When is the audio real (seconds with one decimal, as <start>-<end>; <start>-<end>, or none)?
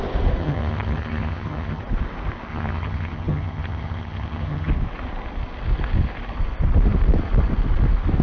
0.0-0.4; 1.8-2.5; 4.7-8.2